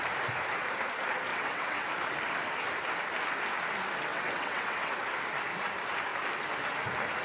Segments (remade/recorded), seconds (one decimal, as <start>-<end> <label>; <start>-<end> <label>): 0.0-1.3 recorded; 1.3-1.9 remade; 1.9-4.1 recorded; 4.1-4.9 remade; 4.9-7.2 recorded